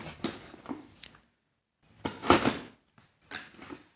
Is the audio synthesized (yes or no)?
no